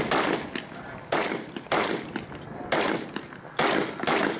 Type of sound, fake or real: real